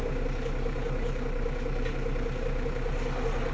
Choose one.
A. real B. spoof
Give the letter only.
A